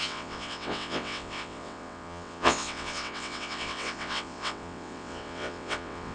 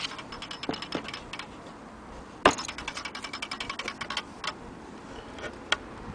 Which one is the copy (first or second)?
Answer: first